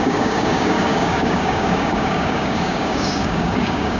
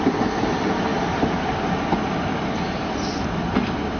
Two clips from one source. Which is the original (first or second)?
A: second